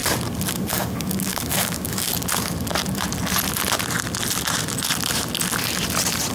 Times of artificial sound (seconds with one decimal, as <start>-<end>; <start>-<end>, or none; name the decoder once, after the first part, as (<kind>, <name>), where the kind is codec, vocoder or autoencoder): 0.5-2.1 (codec, DAC)